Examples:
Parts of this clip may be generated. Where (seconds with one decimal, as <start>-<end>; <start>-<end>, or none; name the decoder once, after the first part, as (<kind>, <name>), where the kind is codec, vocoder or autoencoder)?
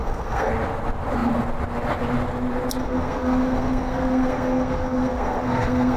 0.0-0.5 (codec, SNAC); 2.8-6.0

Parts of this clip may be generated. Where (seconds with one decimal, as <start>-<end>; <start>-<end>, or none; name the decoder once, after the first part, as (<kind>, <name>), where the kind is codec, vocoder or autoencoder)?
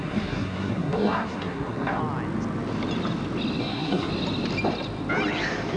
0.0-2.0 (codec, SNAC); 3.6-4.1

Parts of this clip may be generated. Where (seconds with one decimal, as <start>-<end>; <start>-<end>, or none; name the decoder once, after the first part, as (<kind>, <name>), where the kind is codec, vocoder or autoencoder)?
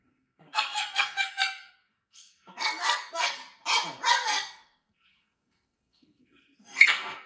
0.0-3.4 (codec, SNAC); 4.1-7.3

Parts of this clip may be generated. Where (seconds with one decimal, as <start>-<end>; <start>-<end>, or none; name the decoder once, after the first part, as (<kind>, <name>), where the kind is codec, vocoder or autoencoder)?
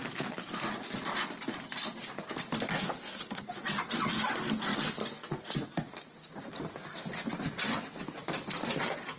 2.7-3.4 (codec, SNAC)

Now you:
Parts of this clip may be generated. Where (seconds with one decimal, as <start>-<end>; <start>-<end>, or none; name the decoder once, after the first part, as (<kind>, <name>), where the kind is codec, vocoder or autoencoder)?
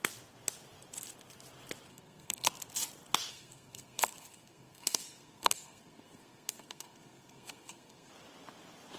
1.9-2.5 (codec, SNAC); 3.3-8.1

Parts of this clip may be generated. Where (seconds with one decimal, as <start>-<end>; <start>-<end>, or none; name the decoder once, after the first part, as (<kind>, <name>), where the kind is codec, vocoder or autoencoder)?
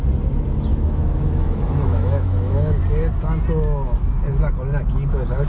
0.7-2.8 (autoencoder, DAC-VAE)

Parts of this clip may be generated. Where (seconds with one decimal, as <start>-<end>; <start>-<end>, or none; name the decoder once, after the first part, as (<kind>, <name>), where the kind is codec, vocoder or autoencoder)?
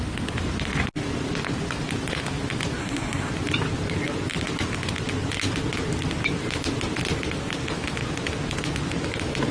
2.8-3.3 (codec, SNAC)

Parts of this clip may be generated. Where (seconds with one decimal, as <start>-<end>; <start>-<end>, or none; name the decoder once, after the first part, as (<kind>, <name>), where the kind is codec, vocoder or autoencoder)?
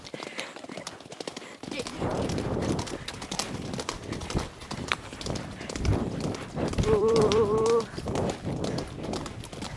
2.1-2.6 (vocoder, BigVGAN v2); 4.2-7.6